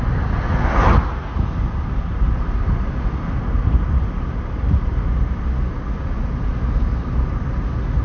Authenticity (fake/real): real